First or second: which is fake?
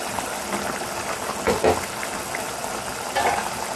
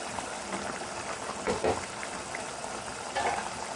second